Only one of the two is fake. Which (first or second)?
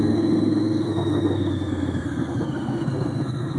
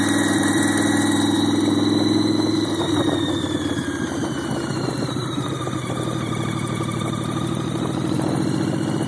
first